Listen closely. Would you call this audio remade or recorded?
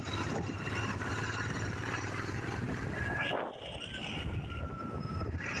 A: recorded